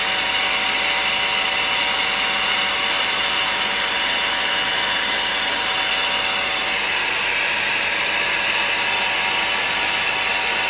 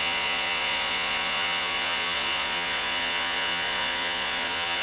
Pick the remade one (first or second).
second